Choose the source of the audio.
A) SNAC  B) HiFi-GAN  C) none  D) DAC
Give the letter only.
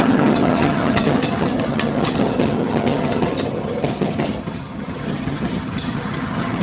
B